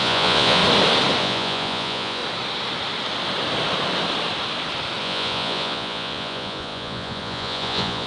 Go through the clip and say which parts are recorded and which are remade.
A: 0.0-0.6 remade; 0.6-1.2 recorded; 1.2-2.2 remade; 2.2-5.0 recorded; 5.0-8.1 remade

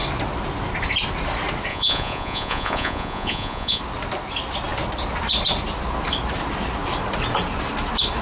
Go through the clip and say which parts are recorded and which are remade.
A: 0.0-1.7 recorded; 1.7-3.8 remade; 3.8-8.2 recorded

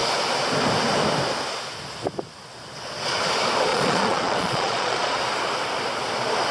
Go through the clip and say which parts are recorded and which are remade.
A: 0.0-3.7 recorded; 3.7-5.2 remade; 5.2-6.5 recorded

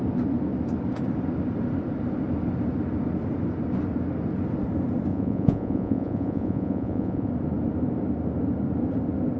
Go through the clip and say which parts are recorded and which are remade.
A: 0.0-5.1 recorded; 5.1-7.3 remade; 7.3-9.4 recorded

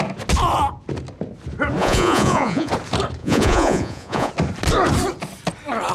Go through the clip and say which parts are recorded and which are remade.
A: 0.0-1.8 recorded; 1.8-2.7 remade; 2.7-3.2 recorded; 3.2-4.3 remade; 4.3-5.9 recorded

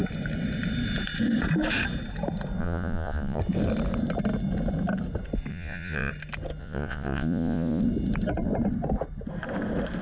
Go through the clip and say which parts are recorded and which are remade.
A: 0.0-2.6 recorded; 2.6-3.4 remade; 3.4-5.5 recorded; 5.5-6.1 remade; 6.1-6.6 recorded; 6.6-7.8 remade; 7.8-10.0 recorded

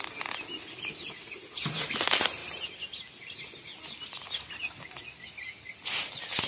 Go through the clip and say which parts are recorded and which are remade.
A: 0.0-6.5 recorded